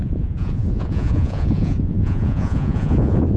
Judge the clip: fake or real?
fake